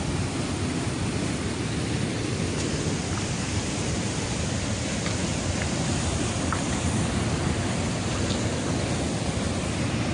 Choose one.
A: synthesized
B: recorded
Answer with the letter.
B